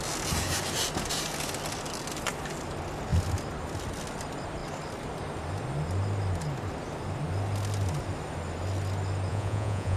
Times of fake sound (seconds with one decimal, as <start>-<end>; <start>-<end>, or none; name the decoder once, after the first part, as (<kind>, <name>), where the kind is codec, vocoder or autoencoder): 9.3-10.0 (vocoder, Vocos)